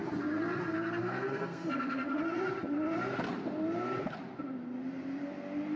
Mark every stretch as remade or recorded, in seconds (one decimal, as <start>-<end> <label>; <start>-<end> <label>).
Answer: 0.0-1.0 recorded; 1.0-2.2 remade; 2.2-5.8 recorded